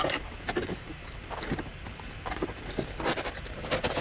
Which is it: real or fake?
fake